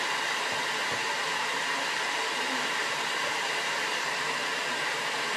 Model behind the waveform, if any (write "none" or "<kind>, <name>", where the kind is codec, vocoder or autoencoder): vocoder, BigVGAN v2